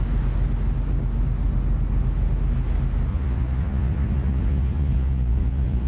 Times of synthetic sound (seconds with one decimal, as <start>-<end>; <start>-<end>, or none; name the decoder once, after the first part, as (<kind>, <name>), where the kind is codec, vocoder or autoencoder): 3.1-5.9 (vocoder, Vocos)